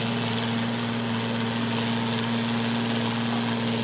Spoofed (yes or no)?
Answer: no